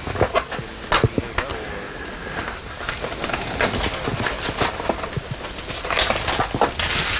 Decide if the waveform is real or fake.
real